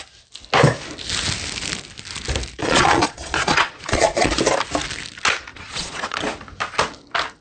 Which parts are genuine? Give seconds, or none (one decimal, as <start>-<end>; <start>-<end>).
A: 0.0-2.6; 4.3-5.5; 6.3-7.4